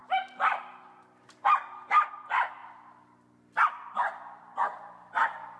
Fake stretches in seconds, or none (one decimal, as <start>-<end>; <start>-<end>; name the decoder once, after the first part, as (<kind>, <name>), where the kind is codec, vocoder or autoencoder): none